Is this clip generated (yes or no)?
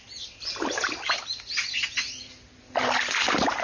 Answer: no